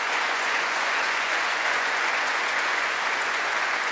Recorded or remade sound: remade